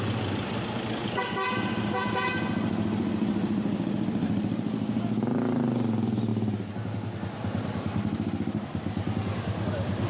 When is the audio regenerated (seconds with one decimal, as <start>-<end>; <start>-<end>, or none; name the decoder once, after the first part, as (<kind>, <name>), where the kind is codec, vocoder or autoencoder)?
none